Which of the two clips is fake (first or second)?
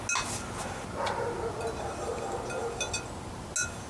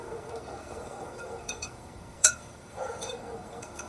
second